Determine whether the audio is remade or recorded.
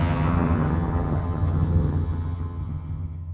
remade